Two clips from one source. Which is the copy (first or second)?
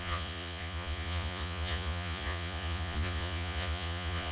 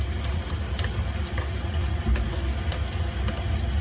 first